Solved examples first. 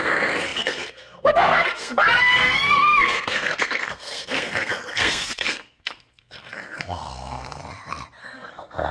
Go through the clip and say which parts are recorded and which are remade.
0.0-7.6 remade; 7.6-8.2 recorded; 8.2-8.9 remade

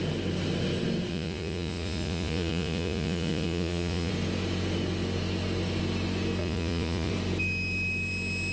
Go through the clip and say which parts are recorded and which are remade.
0.0-1.1 recorded; 1.1-4.1 remade; 4.1-6.4 recorded; 6.4-7.1 remade; 7.1-8.5 recorded

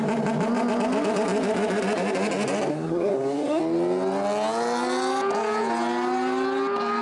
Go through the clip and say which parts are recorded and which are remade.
0.0-2.7 recorded; 2.7-3.6 remade; 3.6-7.0 recorded

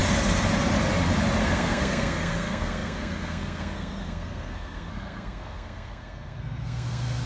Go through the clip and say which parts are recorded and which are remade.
0.0-1.4 recorded; 1.4-7.3 remade

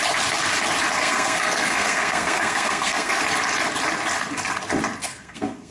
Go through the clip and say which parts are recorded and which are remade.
0.0-1.0 recorded; 1.0-3.2 remade; 3.2-5.0 recorded; 5.0-5.7 remade